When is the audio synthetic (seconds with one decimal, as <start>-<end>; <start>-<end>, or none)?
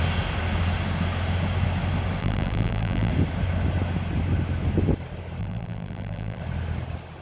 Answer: 2.2-3.1; 5.4-6.4